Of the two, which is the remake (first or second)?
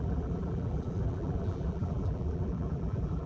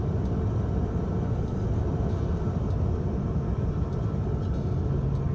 first